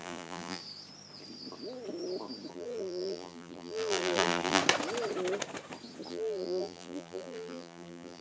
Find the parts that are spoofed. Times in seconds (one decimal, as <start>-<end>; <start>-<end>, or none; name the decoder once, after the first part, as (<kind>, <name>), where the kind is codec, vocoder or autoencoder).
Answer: 0.0-0.6 (vocoder, BigVGAN v2); 2.5-4.6; 6.1-8.2